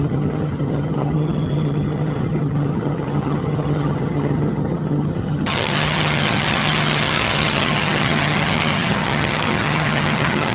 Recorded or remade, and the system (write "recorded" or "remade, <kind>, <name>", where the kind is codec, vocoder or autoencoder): remade, vocoder, HiFi-GAN